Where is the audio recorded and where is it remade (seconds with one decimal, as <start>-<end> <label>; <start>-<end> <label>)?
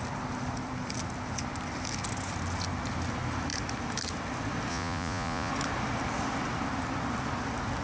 0.0-4.7 recorded; 4.7-5.5 remade; 5.5-7.8 recorded